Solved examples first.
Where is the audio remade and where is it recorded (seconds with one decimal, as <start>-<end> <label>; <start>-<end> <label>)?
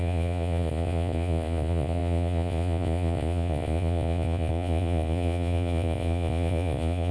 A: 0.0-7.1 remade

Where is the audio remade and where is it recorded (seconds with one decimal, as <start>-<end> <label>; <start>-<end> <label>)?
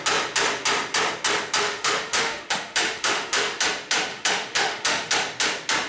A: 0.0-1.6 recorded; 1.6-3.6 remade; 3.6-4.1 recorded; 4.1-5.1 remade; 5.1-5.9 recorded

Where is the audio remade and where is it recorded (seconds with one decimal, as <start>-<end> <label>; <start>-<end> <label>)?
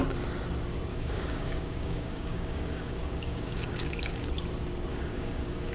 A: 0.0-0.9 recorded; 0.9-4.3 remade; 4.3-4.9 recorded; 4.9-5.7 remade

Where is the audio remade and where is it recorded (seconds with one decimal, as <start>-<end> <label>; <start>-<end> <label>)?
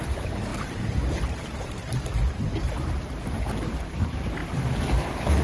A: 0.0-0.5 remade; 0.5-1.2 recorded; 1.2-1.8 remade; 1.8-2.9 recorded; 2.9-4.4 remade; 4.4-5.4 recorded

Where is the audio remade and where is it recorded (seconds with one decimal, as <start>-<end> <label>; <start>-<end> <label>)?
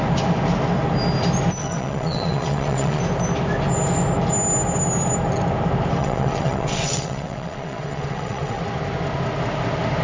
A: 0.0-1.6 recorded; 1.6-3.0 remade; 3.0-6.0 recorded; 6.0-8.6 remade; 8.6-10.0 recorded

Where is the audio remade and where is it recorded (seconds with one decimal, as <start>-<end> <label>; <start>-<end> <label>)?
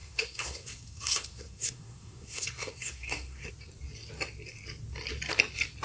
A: 0.0-3.5 remade; 3.5-5.8 recorded